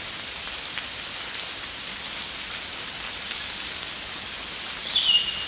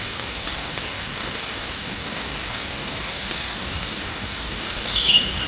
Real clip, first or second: first